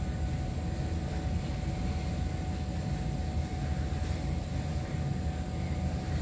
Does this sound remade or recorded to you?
recorded